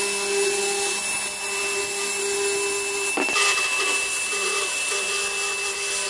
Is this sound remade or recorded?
recorded